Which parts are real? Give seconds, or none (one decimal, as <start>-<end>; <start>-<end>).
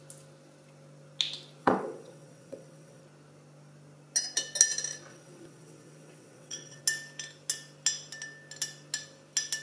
0.0-1.6; 3.0-5.1; 6.8-9.6